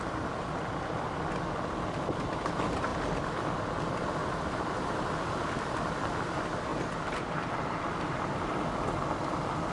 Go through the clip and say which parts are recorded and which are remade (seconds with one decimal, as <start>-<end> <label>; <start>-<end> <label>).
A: 0.0-6.7 recorded; 6.7-7.5 remade; 7.5-9.7 recorded